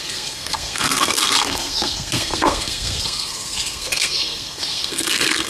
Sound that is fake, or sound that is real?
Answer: fake